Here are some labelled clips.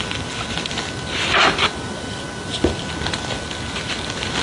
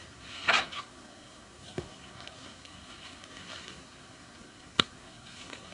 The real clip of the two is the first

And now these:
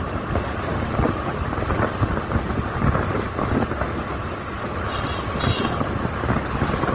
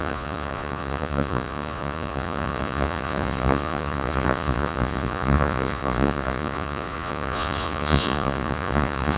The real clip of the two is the first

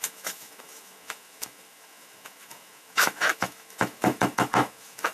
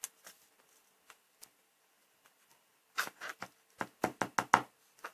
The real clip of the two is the second